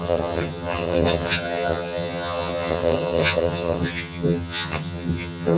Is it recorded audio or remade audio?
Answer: remade